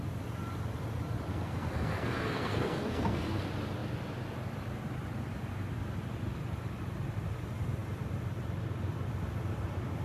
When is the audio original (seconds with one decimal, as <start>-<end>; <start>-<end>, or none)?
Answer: 0.0-1.3; 3.4-10.0